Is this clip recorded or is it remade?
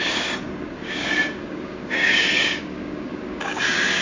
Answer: remade